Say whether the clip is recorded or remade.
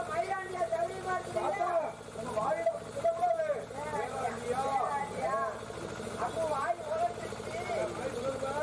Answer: recorded